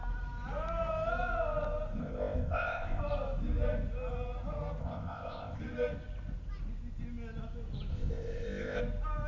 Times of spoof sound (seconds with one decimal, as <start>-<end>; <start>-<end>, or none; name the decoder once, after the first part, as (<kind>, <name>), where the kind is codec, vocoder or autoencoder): 2.0-3.0 (codec, ZipCodec); 4.8-5.6; 7.9-8.8

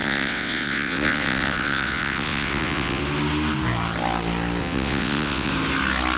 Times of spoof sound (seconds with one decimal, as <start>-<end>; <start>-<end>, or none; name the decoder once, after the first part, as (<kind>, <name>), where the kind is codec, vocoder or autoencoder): 0.0-3.0 (vocoder, WaveNeXt); 4.6-5.5

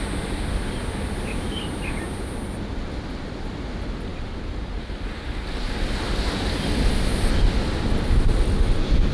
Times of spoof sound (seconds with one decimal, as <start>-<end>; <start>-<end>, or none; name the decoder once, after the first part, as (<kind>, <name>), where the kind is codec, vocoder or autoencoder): 4.1-6.7 (vocoder, BigVGAN v2)

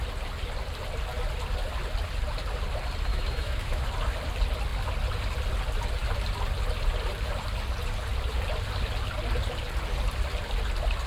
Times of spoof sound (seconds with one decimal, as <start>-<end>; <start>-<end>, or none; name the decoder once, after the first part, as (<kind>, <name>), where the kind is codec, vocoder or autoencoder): 3.1-3.8 (autoencoder, DAC-VAE)

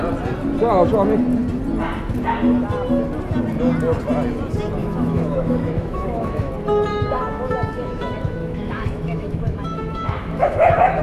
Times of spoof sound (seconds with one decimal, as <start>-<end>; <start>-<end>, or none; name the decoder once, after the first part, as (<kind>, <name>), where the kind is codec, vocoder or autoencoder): 4.8-6.5 (autoencoder, DAC-VAE); 6.9-11.0